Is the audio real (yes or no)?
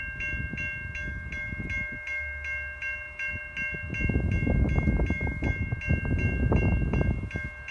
yes